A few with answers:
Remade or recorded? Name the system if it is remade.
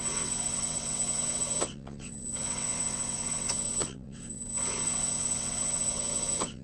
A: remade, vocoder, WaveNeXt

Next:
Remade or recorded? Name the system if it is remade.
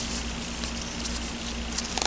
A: recorded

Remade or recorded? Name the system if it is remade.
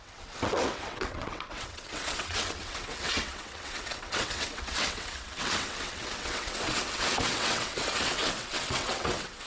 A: remade, vocoder, WaveNeXt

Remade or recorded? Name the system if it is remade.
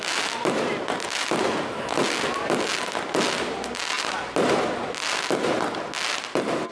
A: recorded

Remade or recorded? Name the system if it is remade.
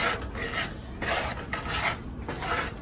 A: recorded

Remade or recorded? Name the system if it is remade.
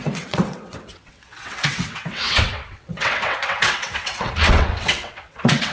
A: remade, vocoder, WaveNeXt